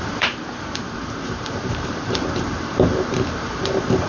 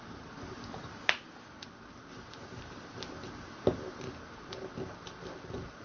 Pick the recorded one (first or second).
second